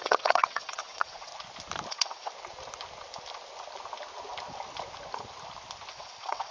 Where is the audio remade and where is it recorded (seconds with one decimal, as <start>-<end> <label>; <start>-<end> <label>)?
0.0-1.3 remade; 1.3-1.9 recorded; 1.9-2.3 remade; 2.3-5.9 recorded; 5.9-6.5 remade